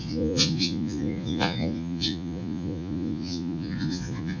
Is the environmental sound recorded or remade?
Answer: remade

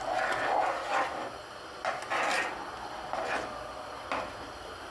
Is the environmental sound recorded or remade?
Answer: recorded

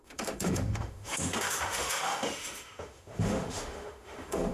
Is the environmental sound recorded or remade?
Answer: remade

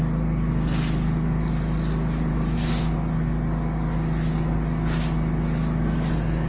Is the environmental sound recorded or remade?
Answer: recorded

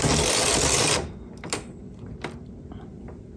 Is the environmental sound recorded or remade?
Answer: recorded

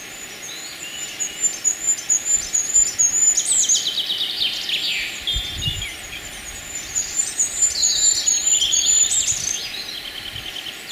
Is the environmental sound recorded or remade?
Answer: recorded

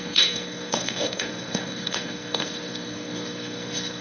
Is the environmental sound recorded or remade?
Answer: remade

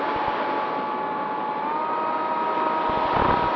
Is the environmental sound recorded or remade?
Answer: recorded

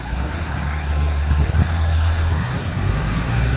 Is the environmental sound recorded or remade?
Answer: remade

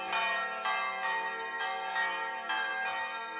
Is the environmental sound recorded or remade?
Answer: recorded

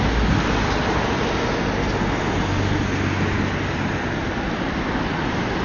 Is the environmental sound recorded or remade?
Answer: recorded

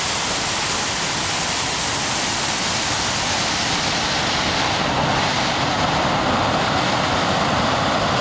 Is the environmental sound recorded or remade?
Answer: recorded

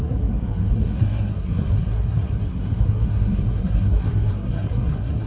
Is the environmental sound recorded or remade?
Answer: remade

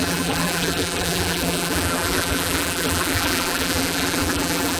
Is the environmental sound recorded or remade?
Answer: remade